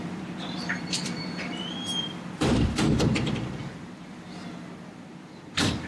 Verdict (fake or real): fake